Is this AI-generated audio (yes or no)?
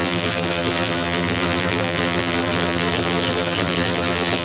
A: yes